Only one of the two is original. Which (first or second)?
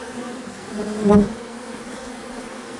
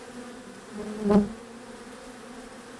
second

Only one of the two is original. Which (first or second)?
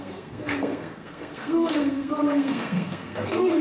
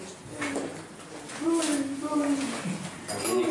second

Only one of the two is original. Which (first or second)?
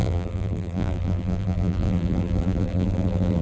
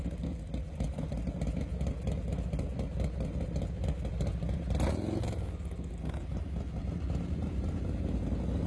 second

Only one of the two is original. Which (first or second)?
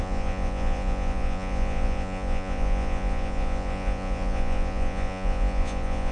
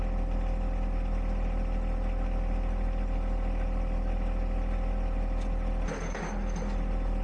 second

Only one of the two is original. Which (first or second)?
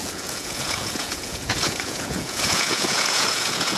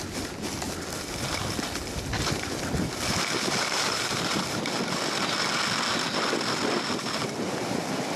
second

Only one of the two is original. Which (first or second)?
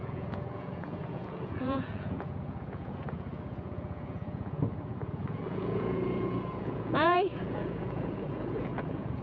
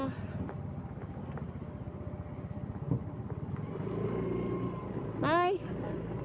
second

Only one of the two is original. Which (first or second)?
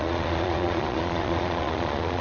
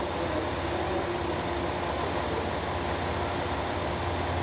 second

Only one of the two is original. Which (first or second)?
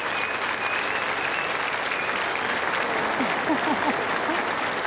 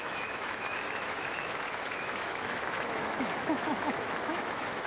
first